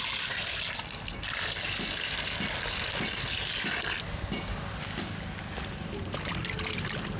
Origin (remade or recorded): recorded